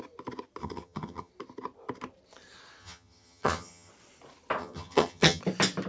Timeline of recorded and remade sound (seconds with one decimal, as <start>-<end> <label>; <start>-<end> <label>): 0.0-0.6 recorded; 0.6-1.3 remade; 1.3-2.8 recorded; 2.8-3.9 remade; 3.9-4.6 recorded; 4.6-5.4 remade; 5.4-5.9 recorded